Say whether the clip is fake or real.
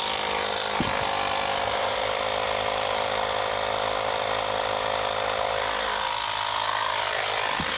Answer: fake